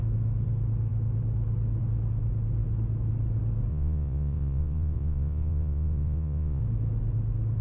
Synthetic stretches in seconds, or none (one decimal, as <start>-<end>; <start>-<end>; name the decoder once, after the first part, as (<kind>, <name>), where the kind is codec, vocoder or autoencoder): 3.7-6.6 (vocoder, Vocos)